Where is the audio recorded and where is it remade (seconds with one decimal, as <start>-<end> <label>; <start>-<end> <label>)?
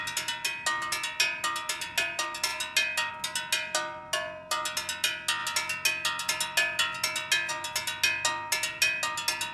0.0-9.5 recorded